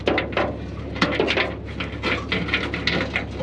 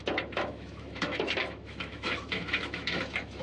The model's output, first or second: second